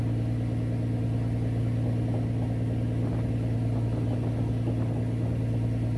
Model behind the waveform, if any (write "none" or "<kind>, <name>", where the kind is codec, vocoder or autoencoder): none